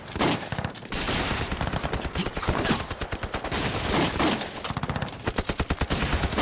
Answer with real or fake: fake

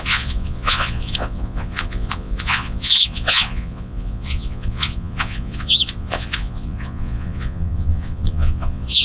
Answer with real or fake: fake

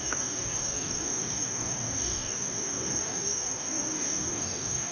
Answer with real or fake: fake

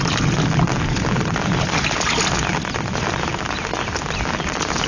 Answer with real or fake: real